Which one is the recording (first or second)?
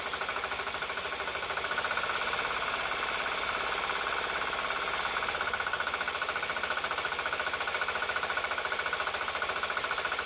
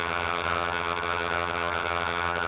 first